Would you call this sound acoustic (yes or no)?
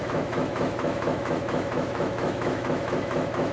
no